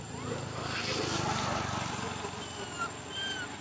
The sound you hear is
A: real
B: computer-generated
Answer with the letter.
A